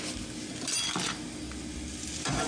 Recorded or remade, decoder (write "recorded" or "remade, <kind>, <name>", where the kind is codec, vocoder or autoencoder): recorded